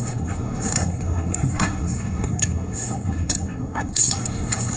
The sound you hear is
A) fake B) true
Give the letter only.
A